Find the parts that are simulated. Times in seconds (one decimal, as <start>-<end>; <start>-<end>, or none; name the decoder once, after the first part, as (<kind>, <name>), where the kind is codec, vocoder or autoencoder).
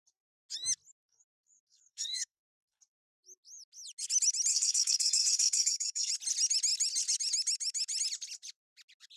1.0-2.8 (codec, SNAC); 4.5-6.1